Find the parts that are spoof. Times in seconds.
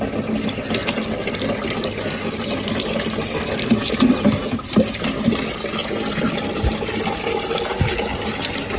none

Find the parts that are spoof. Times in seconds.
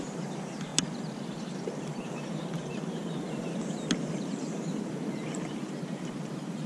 0.0-0.7 (vocoder, BigVGAN v2); 1.4-3.0; 4.0-6.7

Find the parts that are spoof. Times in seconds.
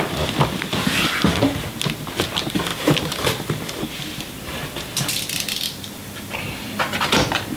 2.7-7.0 (vocoder, BigVGAN v2)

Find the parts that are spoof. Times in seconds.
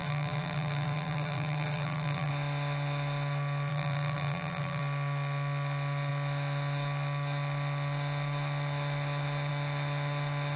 0.0-2.3 (vocoder, BigVGAN v2); 3.7-4.8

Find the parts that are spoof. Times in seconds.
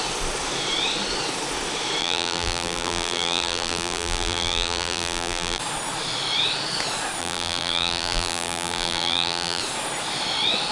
2.0-5.6 (vocoder, BigVGAN v2); 7.2-9.6